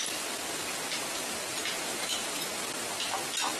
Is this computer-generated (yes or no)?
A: no